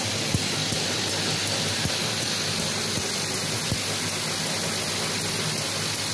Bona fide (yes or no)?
yes